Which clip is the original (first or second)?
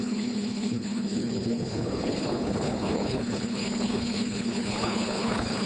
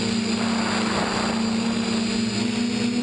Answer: second